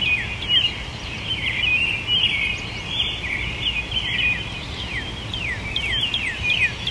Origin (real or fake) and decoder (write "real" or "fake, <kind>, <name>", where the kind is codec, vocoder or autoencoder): real